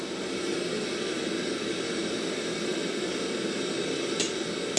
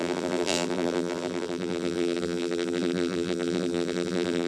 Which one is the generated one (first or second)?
second